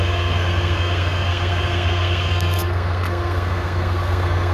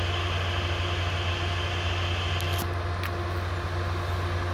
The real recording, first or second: second